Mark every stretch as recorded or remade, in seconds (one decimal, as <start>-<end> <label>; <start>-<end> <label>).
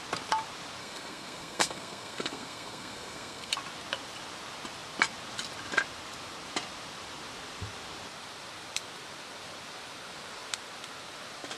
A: 0.0-0.8 recorded; 0.8-3.5 remade; 3.5-11.6 recorded